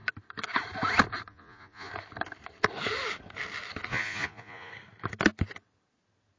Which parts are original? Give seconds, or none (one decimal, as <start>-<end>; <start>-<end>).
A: 0.0-1.3; 1.9-3.9; 4.7-6.4